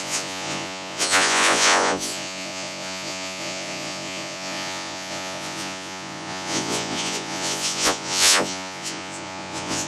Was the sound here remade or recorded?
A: remade